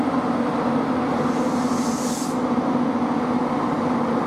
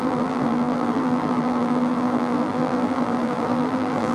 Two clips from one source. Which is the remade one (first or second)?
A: second